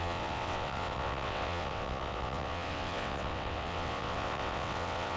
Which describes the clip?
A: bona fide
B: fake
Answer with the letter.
B